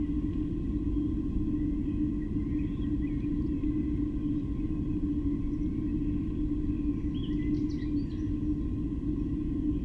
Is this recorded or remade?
recorded